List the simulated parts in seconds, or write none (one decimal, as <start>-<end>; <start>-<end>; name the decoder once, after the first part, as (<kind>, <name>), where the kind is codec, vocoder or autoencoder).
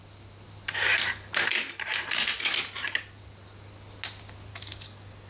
4.5-5.3 (codec, DAC)